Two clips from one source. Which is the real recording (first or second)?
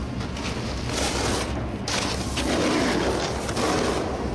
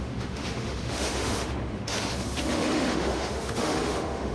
first